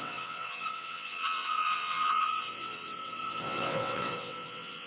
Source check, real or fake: fake